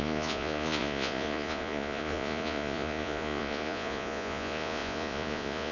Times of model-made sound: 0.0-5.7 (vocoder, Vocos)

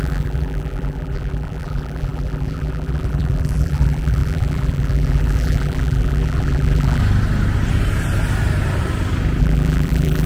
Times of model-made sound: 0.0-7.0 (vocoder, BigVGAN v2); 9.4-10.3

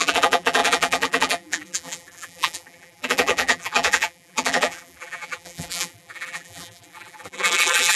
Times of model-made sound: 0.0-8.0 (vocoder, BigVGAN v2)

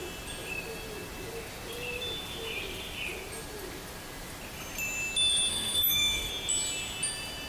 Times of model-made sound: 5.5-6.3 (autoencoder, DAC-VAE)